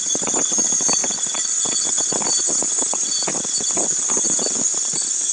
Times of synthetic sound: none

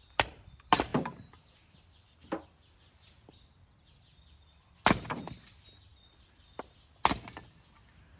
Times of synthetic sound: none